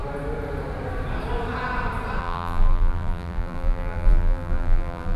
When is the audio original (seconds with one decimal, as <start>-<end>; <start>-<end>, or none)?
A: 0.0-2.2